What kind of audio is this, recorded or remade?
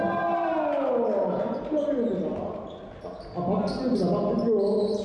recorded